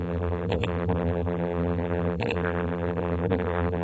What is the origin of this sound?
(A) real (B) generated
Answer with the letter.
B